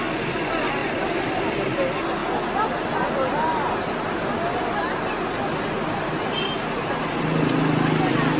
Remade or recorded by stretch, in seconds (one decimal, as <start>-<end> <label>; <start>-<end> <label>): 0.0-0.8 recorded; 0.8-1.5 remade; 1.5-8.4 recorded